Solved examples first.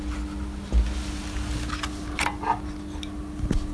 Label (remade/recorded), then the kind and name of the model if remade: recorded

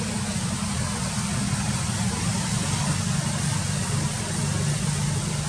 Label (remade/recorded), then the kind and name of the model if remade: recorded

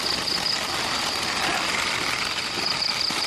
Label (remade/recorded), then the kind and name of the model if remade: recorded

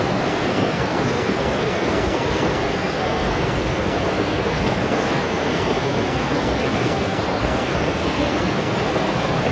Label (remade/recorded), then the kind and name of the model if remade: remade, codec, SNAC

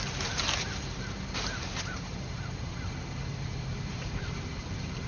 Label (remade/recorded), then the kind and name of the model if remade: remade, vocoder, BigVGAN v2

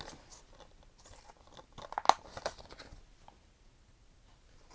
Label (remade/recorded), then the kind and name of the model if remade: recorded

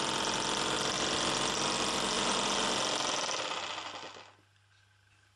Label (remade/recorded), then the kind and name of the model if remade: recorded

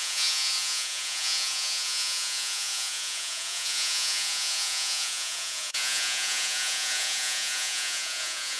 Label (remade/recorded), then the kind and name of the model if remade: remade, vocoder, Vocos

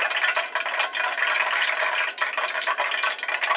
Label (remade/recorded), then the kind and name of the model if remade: recorded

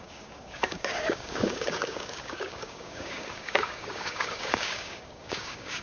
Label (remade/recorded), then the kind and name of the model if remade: remade, codec, DAC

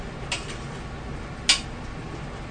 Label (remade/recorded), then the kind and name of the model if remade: recorded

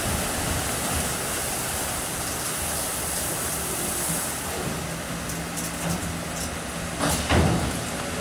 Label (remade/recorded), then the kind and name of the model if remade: recorded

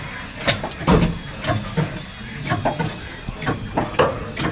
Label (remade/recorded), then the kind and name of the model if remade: recorded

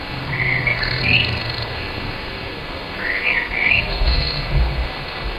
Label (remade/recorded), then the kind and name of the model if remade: remade, codec, SNAC